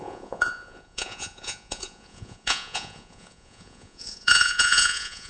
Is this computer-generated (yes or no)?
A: yes